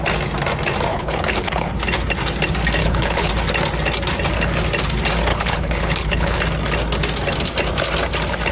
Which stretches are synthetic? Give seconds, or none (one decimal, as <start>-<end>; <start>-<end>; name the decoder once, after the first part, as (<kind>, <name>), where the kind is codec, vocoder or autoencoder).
0.9-1.7 (codec, HILCodec); 2.8-3.3; 5.3-6.4